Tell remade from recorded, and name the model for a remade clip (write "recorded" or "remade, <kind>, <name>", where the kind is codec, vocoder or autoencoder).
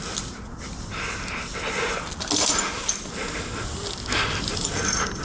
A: recorded